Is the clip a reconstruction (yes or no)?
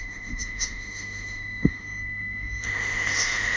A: yes